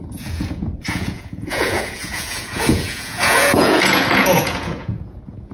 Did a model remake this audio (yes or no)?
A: yes